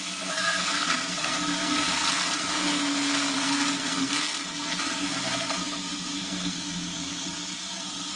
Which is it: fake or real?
fake